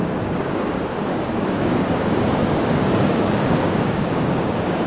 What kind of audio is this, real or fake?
fake